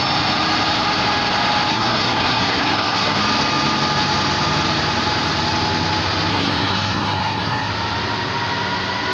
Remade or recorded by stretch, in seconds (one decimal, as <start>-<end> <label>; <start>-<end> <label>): 0.0-1.7 recorded; 1.7-3.2 remade; 3.2-6.3 recorded; 6.3-7.7 remade; 7.7-9.1 recorded